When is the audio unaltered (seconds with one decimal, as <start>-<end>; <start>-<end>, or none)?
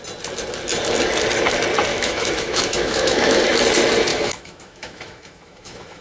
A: 0.0-1.9; 3.4-4.1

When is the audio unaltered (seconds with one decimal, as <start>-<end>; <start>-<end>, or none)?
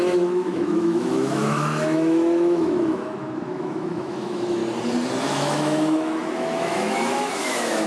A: 4.6-5.2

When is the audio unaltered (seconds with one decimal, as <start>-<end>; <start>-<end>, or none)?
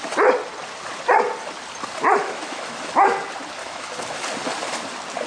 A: 0.0-2.2; 2.9-3.6; 4.2-5.3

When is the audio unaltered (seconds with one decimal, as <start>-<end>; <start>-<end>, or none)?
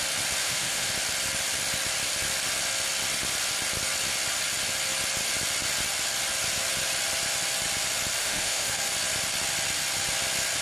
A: 0.0-0.4; 0.9-8.2; 8.8-10.6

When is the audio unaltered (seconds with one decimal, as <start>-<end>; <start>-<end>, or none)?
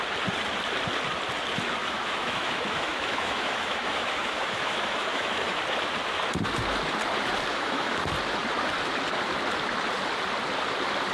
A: 0.0-1.8; 5.6-7.5; 8.0-11.1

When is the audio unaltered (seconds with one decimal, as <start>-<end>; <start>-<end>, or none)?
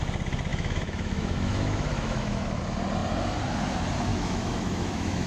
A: 0.0-0.5; 2.6-4.1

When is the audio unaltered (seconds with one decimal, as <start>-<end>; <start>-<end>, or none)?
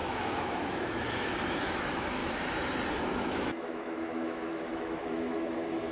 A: 2.2-3.0